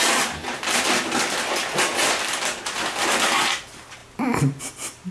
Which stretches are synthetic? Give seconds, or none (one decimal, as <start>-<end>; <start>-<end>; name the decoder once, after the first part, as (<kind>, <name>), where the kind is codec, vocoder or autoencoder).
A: none